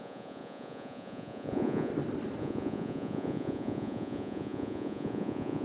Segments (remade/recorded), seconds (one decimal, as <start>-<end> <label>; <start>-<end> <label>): 0.0-1.9 remade; 1.9-2.4 recorded; 2.4-5.6 remade